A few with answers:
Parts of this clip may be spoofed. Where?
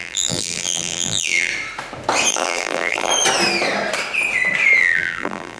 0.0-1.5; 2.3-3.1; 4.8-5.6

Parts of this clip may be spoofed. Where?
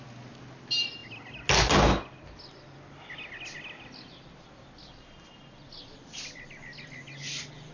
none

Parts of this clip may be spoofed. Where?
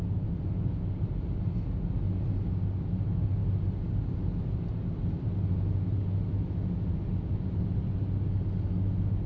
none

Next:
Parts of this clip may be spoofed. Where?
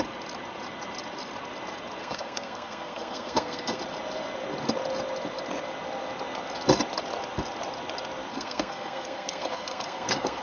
2.0-3.8; 8.3-10.4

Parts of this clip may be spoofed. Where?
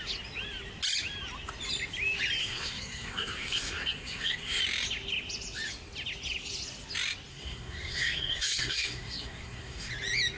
2.4-4.6; 7.3-9.9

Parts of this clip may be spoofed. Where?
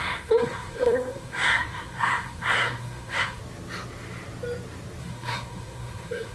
0.0-3.4; 5.0-6.3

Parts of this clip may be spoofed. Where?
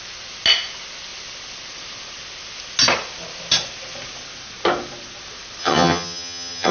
5.6-6.7